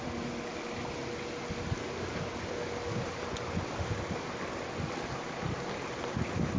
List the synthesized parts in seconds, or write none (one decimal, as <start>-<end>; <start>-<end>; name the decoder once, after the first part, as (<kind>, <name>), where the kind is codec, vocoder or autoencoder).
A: 1.0-3.9 (vocoder, BigVGAN v2)